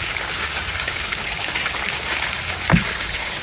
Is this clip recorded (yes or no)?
no